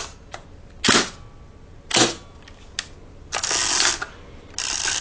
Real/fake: real